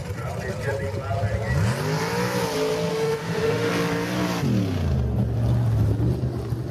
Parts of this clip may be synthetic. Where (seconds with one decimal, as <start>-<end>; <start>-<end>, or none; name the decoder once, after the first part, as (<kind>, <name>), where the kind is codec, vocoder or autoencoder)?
2.9-3.7 (autoencoder, DAC-VAE)